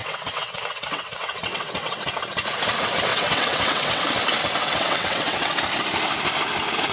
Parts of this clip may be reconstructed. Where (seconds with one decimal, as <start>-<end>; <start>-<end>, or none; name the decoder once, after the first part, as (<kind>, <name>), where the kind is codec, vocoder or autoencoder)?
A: 0.0-2.1 (vocoder, WaveNeXt); 3.1-4.0; 4.6-5.5